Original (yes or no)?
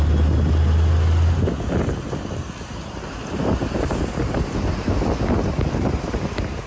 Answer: yes